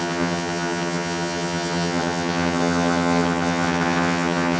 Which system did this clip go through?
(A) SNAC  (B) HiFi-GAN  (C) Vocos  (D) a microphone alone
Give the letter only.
B